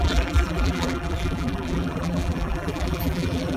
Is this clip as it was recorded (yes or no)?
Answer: no